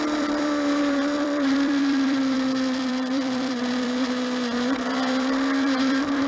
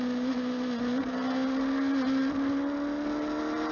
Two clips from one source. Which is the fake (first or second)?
first